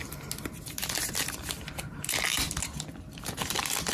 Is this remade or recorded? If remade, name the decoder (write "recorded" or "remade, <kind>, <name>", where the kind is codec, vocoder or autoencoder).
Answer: recorded